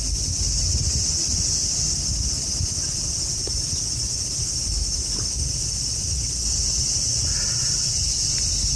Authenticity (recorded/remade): recorded